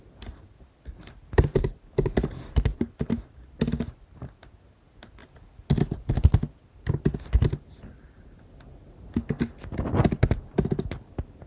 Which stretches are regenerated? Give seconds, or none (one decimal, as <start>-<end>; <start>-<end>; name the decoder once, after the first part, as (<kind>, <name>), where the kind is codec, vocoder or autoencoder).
none